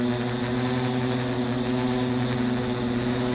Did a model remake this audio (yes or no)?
no